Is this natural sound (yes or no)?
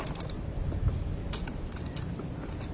yes